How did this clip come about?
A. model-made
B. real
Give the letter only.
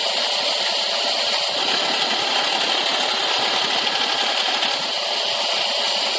B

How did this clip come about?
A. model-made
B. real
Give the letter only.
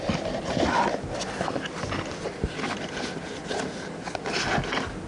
B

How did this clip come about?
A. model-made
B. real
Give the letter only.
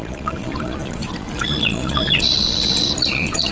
A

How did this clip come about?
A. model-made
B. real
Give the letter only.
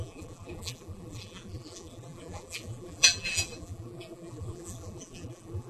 A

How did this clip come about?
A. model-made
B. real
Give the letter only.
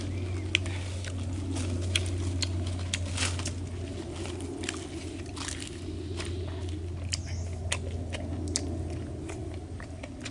B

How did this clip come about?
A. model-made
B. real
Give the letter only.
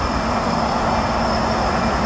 B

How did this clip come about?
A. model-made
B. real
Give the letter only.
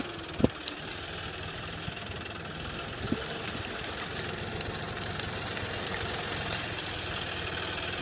B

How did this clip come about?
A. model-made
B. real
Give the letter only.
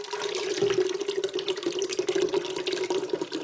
B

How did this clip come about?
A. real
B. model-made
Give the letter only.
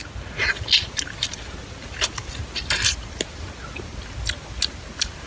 A